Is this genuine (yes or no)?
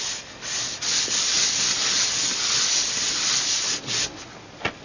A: yes